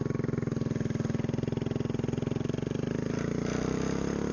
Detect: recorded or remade recorded